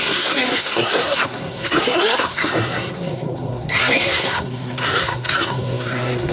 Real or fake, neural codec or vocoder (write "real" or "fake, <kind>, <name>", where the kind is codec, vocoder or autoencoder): fake, codec, SNAC